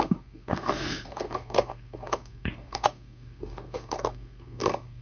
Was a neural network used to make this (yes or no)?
yes